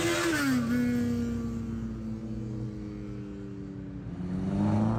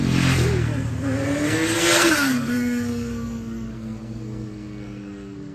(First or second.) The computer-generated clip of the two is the second